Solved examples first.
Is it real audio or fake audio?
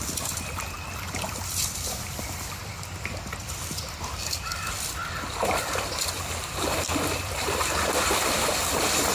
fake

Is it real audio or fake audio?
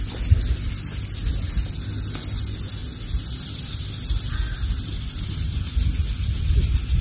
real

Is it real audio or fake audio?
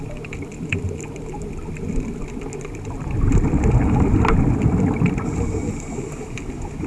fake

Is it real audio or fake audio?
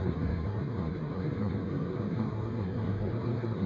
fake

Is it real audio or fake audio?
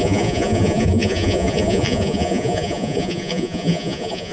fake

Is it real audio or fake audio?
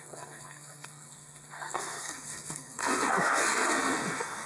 fake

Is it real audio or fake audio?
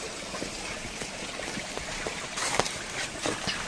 real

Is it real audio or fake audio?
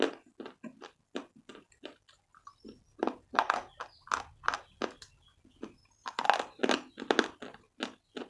real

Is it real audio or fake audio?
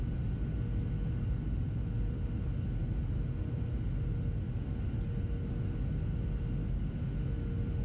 real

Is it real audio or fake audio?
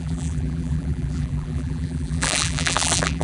fake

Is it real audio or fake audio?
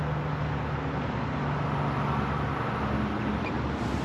real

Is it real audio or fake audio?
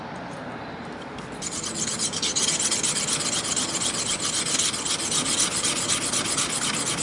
real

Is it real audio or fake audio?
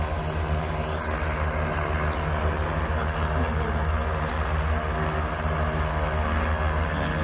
real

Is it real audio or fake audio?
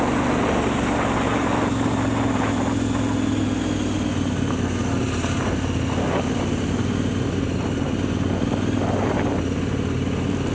real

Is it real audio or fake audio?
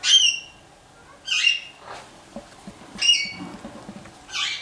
real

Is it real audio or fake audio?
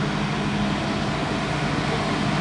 real